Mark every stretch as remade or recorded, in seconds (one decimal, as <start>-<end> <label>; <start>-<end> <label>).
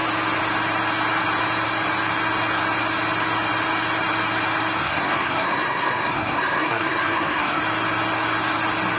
0.0-4.8 recorded; 4.8-7.6 remade; 7.6-9.0 recorded